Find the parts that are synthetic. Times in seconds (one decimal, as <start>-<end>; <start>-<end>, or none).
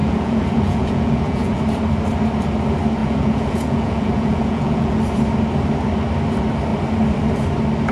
0.0-1.6; 3.0-5.0